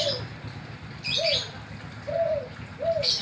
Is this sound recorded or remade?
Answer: recorded